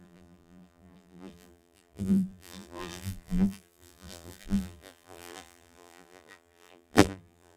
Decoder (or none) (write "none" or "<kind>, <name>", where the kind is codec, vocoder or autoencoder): vocoder, BigVGAN v2